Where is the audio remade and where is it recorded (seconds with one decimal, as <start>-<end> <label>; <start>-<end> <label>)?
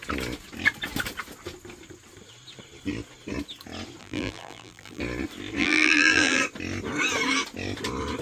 0.0-4.0 recorded; 4.0-5.0 remade; 5.0-5.6 recorded; 5.6-6.4 remade; 6.4-8.2 recorded